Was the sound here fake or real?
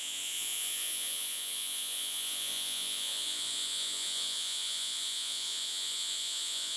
fake